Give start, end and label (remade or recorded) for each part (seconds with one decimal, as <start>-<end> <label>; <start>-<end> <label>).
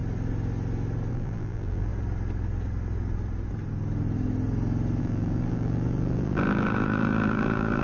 0.0-1.1 recorded; 1.1-1.9 remade; 1.9-5.0 recorded; 5.0-7.8 remade